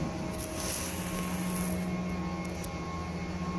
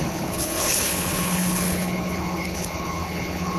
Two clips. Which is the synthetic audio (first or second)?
second